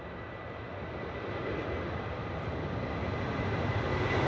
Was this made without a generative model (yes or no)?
yes